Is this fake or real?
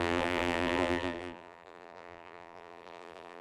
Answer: fake